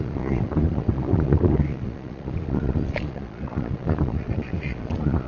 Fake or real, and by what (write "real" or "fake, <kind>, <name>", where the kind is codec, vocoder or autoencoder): fake, vocoder, Vocos